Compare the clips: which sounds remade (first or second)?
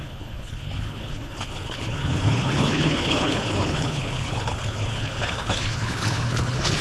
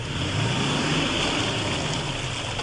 first